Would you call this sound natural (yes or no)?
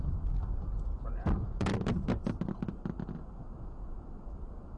yes